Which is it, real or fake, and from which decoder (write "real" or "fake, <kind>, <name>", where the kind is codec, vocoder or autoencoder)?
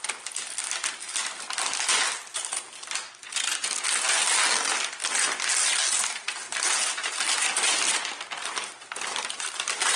real